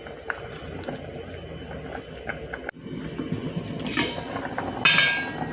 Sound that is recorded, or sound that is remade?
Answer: recorded